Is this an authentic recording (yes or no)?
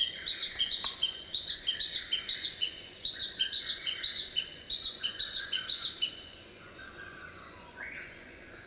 no